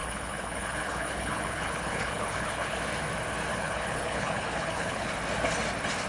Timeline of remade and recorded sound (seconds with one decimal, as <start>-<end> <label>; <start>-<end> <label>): 0.0-2.8 remade; 2.8-3.5 recorded; 3.5-5.1 remade; 5.1-6.1 recorded